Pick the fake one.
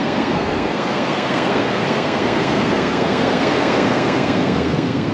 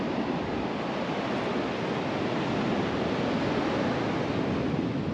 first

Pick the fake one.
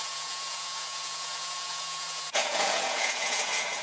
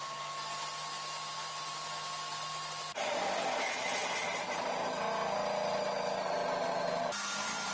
first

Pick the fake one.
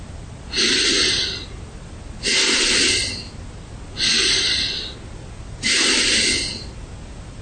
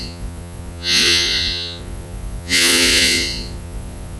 second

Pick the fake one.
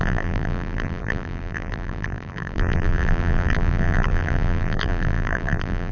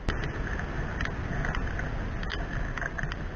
first